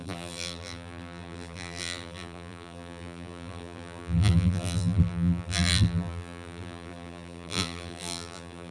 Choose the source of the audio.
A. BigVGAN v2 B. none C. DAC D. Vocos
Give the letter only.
A